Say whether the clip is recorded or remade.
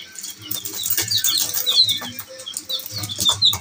recorded